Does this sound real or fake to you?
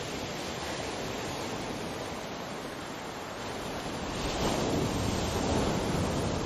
real